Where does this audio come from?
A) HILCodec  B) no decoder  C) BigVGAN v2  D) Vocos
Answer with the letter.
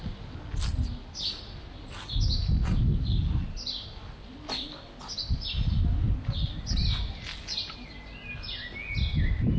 B